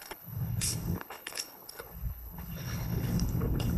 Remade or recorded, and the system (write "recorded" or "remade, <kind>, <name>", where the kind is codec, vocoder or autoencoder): remade, codec, HILCodec